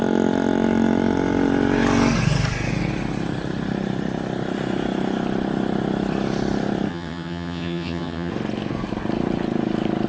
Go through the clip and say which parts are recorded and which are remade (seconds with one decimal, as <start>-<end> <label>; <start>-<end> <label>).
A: 0.0-6.9 recorded; 6.9-8.3 remade; 8.3-10.1 recorded